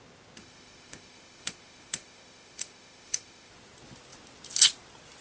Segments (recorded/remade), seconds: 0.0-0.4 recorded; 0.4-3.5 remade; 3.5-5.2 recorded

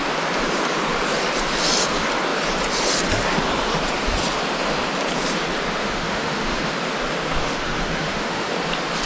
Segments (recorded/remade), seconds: 0.0-5.8 recorded; 5.8-6.7 remade; 6.7-7.4 recorded; 7.4-8.5 remade; 8.5-9.1 recorded

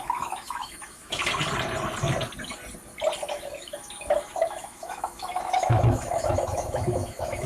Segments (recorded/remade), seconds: 0.0-1.2 remade; 1.2-3.3 recorded; 3.3-7.5 remade

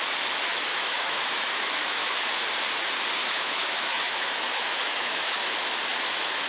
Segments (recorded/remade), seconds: 0.0-0.7 recorded; 0.7-2.3 remade; 2.3-3.2 recorded; 3.2-5.4 remade; 5.4-6.5 recorded

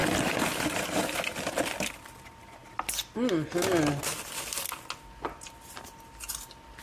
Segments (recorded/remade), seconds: 0.0-6.8 recorded